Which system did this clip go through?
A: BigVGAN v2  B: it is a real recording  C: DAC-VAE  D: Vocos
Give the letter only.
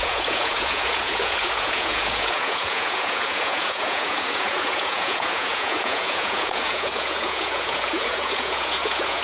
D